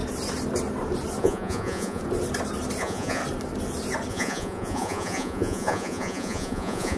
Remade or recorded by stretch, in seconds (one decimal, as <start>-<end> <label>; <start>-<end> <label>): 0.0-1.2 recorded; 1.2-2.0 remade; 2.0-2.8 recorded; 2.8-3.2 remade; 3.2-4.1 recorded; 4.1-7.0 remade